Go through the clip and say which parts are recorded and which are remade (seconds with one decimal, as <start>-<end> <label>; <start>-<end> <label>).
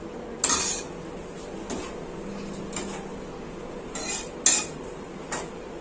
0.0-5.8 recorded